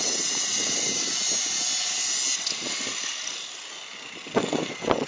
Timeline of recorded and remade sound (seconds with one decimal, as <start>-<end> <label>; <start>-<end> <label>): 0.0-1.1 remade; 1.1-4.2 recorded; 4.2-5.1 remade